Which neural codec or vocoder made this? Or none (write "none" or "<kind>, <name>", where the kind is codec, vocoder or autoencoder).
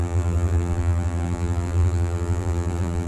vocoder, BigVGAN v2